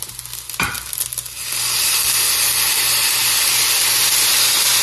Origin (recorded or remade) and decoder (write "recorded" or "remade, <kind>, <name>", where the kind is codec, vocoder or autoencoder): recorded